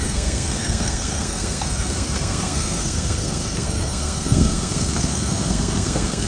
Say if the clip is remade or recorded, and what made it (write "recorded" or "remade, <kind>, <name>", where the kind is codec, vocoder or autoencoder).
remade, codec, SNAC